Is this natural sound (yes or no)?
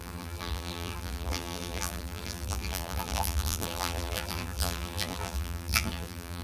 no